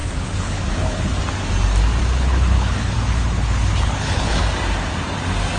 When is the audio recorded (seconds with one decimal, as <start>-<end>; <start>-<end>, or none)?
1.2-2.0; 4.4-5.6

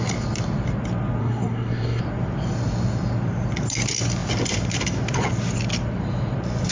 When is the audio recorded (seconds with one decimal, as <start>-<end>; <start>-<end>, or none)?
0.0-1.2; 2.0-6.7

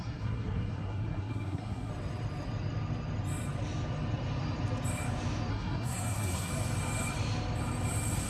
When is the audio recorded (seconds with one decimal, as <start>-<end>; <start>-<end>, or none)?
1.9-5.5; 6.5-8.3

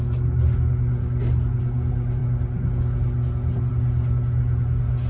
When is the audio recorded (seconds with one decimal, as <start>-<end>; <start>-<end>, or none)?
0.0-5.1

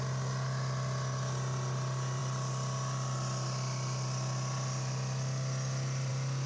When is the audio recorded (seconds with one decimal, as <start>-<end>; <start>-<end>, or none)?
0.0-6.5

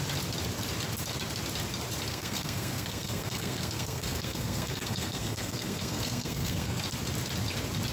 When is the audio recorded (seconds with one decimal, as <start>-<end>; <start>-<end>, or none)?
0.0-2.1; 6.8-7.9

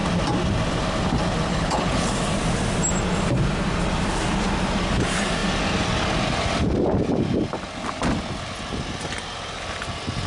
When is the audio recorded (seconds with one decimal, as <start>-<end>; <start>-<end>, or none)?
0.0-1.5; 2.1-10.3

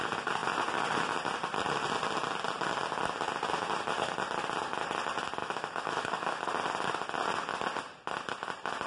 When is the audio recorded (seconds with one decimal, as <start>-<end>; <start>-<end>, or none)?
0.0-5.4; 6.4-8.9